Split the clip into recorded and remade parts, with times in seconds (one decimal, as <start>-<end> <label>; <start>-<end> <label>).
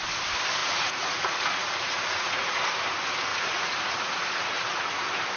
0.0-0.6 recorded; 0.6-2.6 remade; 2.6-3.3 recorded; 3.3-5.0 remade; 5.0-5.4 recorded